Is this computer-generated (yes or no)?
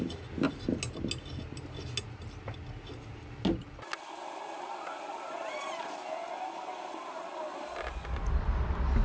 no